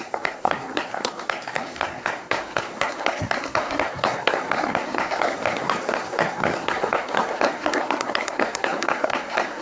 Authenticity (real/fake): fake